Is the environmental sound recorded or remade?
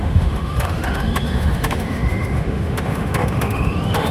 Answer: remade